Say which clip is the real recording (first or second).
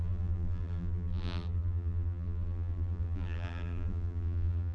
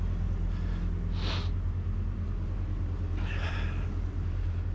second